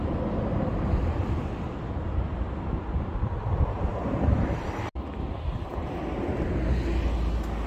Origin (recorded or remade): recorded